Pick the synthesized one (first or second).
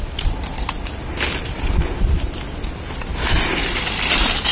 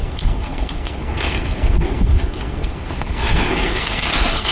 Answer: second